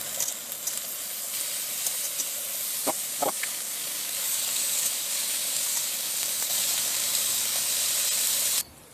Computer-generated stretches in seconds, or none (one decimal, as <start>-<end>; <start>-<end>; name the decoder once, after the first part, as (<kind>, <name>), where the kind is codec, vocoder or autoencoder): 3.2-7.7 (codec, DAC)